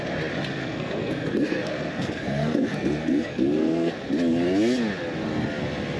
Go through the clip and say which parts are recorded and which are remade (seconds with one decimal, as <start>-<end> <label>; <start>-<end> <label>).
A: 0.0-0.6 recorded; 0.6-3.9 remade; 3.9-6.0 recorded